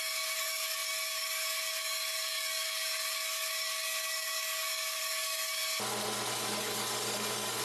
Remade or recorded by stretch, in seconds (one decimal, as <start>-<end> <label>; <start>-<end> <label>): 0.0-5.6 remade; 5.6-6.3 recorded; 6.3-7.6 remade